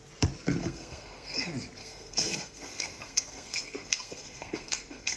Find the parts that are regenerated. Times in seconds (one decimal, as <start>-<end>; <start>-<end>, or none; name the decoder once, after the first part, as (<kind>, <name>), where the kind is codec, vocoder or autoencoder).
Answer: 0.6-1.4 (codec, SNAC); 1.8-5.2